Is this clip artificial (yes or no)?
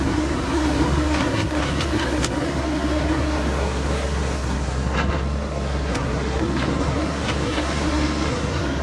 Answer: yes